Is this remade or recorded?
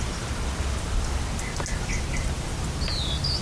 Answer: recorded